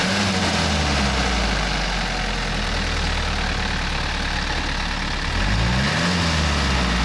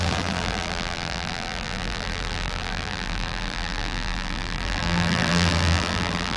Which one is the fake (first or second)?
second